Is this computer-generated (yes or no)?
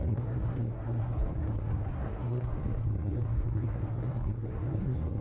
yes